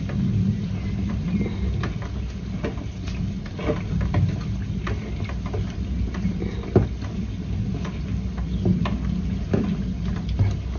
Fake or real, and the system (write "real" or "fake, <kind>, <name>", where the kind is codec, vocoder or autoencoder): real